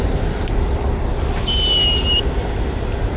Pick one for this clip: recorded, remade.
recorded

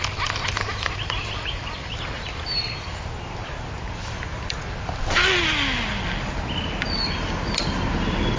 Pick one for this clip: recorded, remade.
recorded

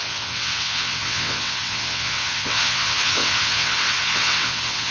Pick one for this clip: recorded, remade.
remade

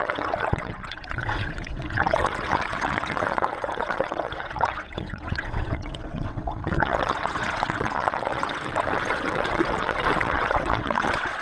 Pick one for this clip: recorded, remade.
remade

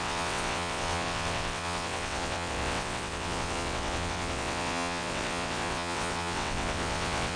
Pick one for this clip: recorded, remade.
remade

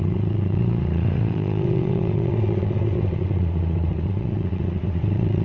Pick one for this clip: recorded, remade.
remade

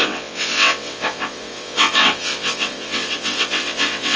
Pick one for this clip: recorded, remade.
remade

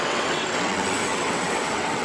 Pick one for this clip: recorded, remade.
remade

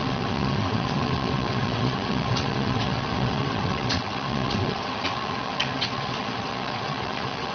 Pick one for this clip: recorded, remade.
remade